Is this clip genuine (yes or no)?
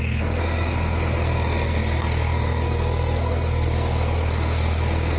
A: no